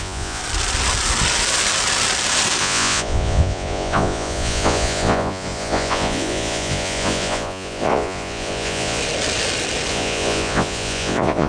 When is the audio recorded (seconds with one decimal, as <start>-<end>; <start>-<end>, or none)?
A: 0.4-2.6; 9.0-9.9